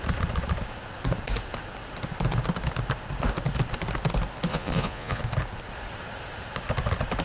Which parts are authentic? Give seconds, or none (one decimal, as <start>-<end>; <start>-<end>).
0.0-4.5; 5.2-7.2

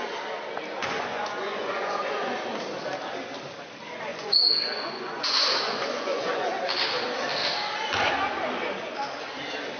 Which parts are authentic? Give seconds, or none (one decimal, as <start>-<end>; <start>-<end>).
0.0-0.8; 2.3-4.1; 6.5-9.8

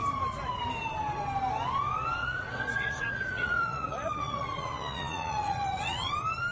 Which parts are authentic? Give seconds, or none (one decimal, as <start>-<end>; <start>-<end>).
0.0-2.2; 6.1-6.5